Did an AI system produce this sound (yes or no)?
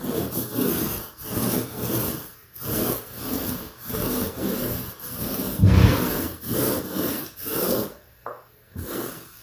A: yes